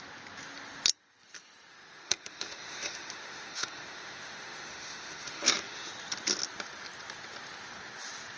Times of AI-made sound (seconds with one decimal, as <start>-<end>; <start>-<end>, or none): 1.7-5.9